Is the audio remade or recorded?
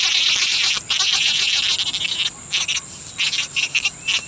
recorded